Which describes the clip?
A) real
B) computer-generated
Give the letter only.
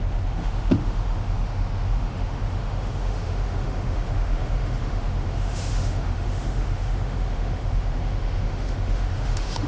B